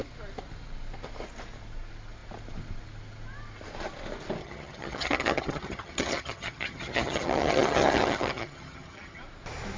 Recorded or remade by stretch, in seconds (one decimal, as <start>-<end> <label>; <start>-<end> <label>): 0.0-4.4 recorded; 4.4-9.2 remade; 9.2-9.8 recorded